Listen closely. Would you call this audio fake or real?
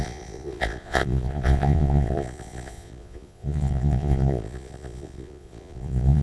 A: fake